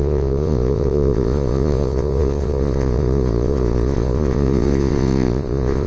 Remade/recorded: remade